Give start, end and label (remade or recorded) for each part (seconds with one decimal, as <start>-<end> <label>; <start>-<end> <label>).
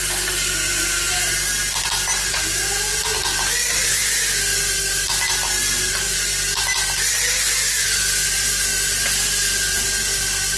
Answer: 0.0-10.6 recorded